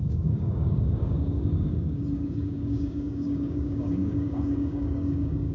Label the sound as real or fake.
fake